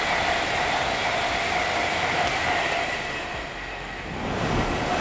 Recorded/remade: recorded